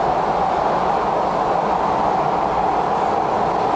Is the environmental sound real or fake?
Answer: real